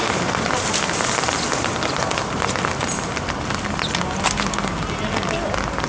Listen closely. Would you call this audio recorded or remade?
recorded